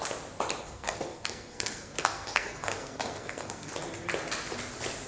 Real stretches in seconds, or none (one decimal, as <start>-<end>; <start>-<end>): 0.0-0.6; 3.7-5.1